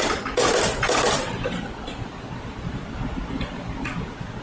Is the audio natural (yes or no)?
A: no